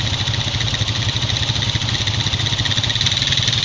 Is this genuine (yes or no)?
yes